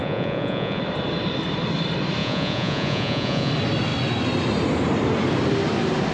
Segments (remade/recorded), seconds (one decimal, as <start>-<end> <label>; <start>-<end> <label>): 0.0-0.8 remade; 0.8-2.2 recorded; 2.2-3.5 remade; 3.5-6.1 recorded